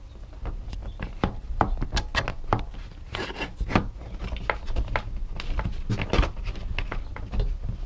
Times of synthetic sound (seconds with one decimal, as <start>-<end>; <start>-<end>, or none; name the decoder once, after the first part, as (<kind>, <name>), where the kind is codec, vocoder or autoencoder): 0.8-1.8 (vocoder, BigVGAN v2)